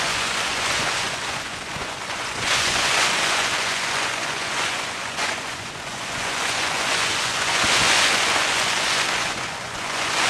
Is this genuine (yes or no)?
no